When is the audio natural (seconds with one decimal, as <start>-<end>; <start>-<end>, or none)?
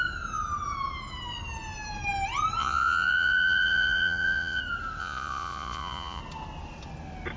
0.0-2.6; 4.6-5.0; 6.2-7.4